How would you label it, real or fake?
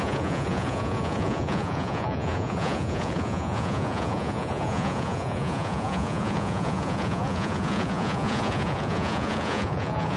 fake